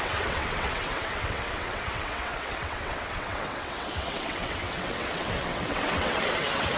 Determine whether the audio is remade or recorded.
remade